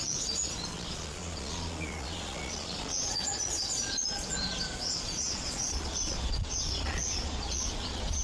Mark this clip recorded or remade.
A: remade